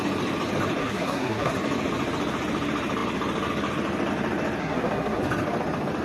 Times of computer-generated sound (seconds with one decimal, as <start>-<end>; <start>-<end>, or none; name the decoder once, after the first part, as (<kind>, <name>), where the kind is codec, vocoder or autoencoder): 0.8-1.5 (codec, SNAC); 4.6-5.2